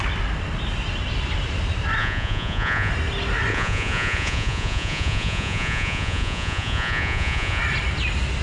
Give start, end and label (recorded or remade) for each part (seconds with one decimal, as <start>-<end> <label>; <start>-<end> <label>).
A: 0.0-2.0 recorded; 2.0-2.9 remade; 2.9-3.5 recorded; 3.5-7.6 remade; 7.6-8.4 recorded